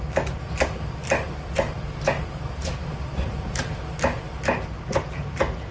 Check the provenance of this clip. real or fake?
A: real